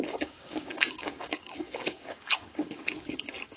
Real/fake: fake